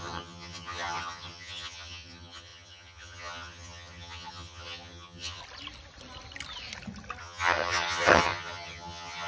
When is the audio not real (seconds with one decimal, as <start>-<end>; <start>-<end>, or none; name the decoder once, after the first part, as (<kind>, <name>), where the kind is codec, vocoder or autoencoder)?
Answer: 0.0-5.4 (vocoder, HiFi-GAN); 7.2-9.3